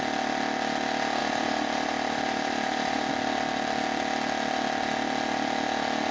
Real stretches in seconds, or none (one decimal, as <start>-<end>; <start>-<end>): 0.0-1.2; 3.1-6.1